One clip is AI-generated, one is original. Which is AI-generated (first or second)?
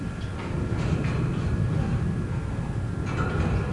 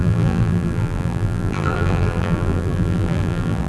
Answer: second